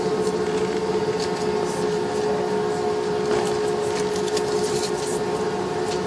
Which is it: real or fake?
real